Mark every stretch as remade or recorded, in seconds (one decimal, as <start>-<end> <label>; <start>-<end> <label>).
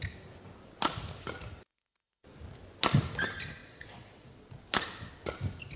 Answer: 0.0-3.6 recorded; 3.6-4.4 remade; 4.4-5.8 recorded